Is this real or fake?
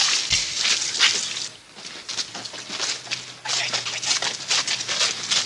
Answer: real